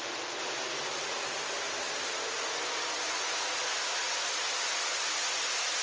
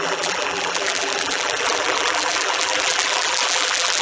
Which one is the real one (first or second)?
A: first